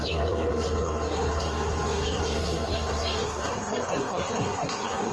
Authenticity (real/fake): fake